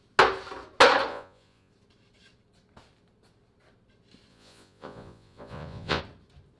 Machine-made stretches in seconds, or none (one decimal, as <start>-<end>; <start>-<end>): 1.1-1.7; 4.3-6.0